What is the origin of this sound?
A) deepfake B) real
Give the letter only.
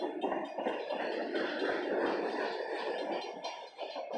B